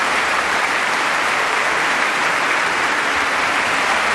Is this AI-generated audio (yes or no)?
yes